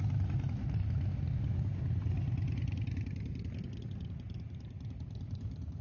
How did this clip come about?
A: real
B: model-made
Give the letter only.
A